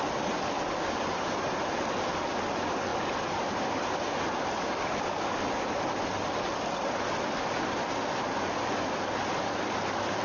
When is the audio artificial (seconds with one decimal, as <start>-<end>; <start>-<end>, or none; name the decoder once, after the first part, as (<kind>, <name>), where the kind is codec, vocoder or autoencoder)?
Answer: none